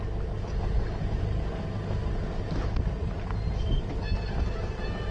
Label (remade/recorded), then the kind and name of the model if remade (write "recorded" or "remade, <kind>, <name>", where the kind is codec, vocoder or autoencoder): recorded